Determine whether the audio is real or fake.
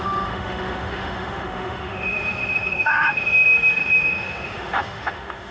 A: fake